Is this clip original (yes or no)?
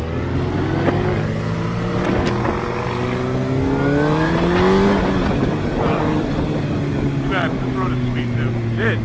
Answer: yes